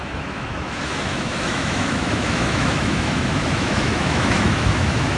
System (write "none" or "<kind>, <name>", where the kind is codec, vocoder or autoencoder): autoencoder, DAC-VAE